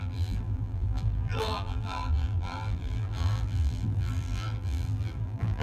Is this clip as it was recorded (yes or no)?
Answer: no